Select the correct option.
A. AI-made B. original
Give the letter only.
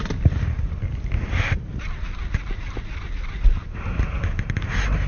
B